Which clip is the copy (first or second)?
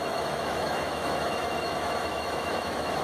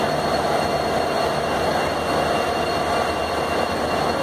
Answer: first